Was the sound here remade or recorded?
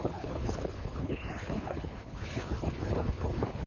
remade